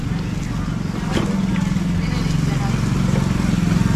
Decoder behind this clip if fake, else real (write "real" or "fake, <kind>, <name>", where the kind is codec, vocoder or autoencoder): real